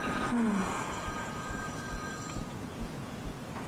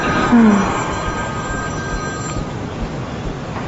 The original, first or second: second